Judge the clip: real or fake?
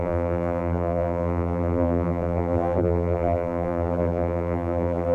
fake